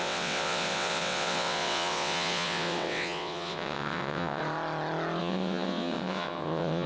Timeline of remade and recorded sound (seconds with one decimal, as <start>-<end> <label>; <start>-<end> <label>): 0.0-4.4 remade; 4.4-5.2 recorded; 5.2-6.9 remade